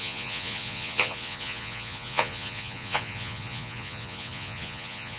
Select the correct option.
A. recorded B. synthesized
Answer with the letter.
B